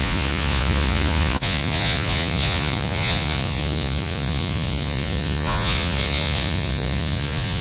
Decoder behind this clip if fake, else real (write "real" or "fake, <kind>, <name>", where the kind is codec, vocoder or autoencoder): fake, vocoder, Vocos